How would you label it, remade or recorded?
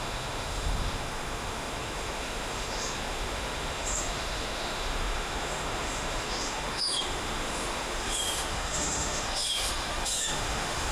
remade